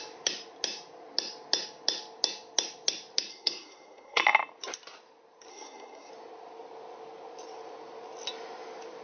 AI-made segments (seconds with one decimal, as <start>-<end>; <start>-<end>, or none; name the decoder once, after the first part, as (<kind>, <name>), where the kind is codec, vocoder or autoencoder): 3.3-4.2 (codec, SNAC); 5.5-6.1